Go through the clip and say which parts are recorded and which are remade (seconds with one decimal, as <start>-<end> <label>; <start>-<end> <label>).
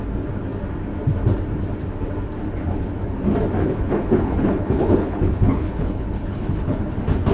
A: 0.0-3.6 recorded; 3.6-6.8 remade; 6.8-7.3 recorded